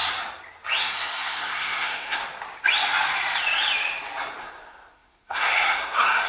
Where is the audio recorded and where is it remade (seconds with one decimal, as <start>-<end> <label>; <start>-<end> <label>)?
0.0-0.8 recorded; 0.8-2.2 remade; 2.2-4.4 recorded; 4.4-6.3 remade